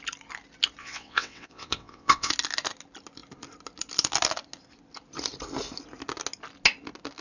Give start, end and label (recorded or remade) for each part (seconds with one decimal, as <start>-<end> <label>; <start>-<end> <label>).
0.0-0.8 recorded; 0.8-2.3 remade; 2.3-7.2 recorded